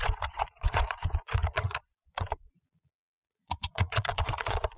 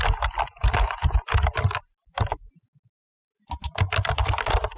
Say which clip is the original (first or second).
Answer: second